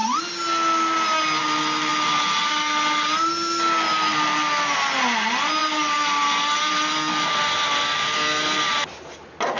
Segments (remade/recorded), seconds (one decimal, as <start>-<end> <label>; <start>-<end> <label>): 0.0-9.6 recorded